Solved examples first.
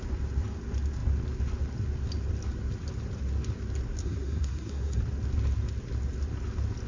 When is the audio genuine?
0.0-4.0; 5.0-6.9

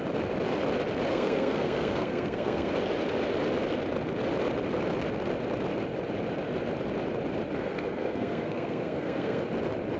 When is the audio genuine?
0.0-1.1; 2.7-7.6; 9.4-10.0

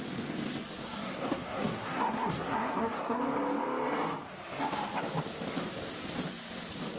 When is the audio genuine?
0.0-0.8; 3.2-7.0

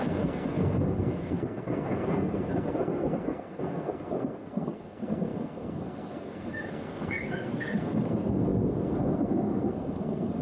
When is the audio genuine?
none

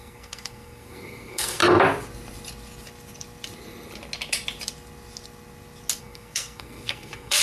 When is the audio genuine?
1.6-6.0

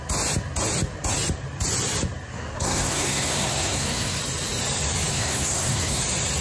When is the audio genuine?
0.0-2.3; 4.2-5.1; 6.0-6.4

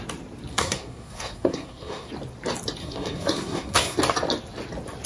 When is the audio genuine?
0.0-0.5; 2.1-2.8; 4.0-5.1

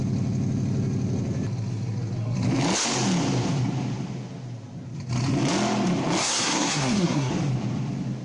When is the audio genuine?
0.0-6.2; 7.3-8.2